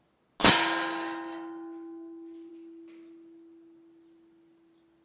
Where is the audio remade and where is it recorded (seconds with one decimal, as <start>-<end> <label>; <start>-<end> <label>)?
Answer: 0.0-5.0 recorded